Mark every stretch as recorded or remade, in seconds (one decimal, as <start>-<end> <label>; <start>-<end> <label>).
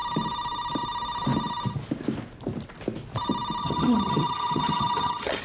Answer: 0.0-3.6 recorded; 3.6-5.4 remade